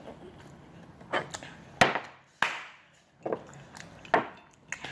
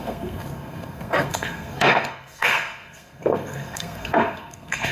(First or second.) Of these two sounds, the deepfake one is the second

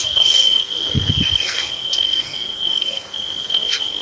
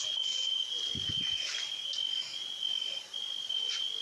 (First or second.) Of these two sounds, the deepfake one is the first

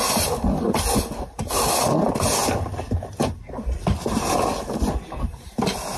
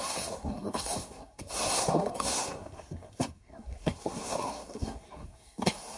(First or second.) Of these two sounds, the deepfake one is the second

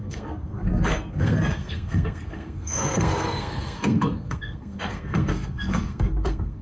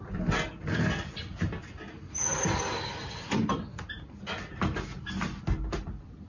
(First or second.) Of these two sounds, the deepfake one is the first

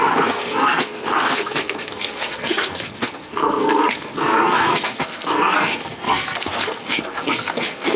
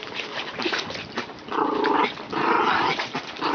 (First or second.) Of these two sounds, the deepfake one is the first